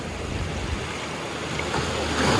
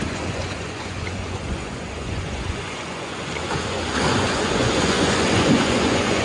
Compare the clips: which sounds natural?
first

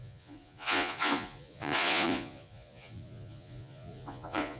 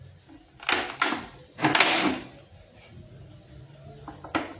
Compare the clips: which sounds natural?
second